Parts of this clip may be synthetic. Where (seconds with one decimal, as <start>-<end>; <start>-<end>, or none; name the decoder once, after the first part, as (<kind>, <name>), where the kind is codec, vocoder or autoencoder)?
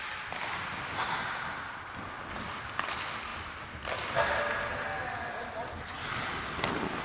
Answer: none